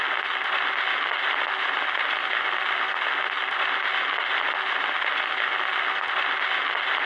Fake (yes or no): no